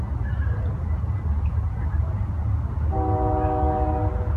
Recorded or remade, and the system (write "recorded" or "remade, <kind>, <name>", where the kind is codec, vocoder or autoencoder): recorded